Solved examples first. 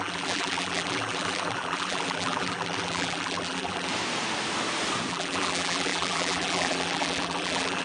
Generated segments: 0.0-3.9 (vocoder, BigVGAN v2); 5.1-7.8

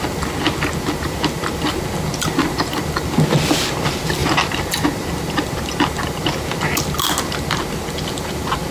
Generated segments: none

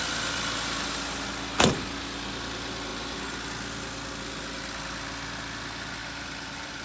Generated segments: 6.0-6.8 (vocoder, BigVGAN v2)

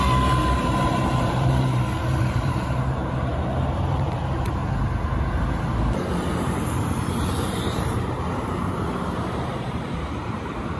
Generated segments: 0.0-4.6 (vocoder, BigVGAN v2); 6.3-10.8

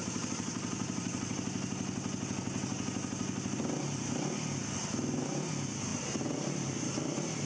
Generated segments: 0.0-1.3 (vocoder, BigVGAN v2); 5.9-7.5

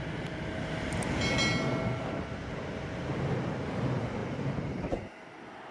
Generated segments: 4.2-5.7 (vocoder, BigVGAN v2)

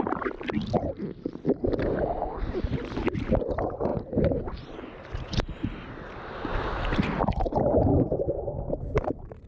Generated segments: none